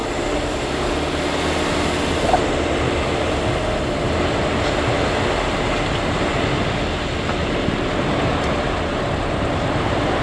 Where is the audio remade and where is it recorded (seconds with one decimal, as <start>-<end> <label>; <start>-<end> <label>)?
0.0-0.9 remade; 0.9-7.4 recorded; 7.4-10.2 remade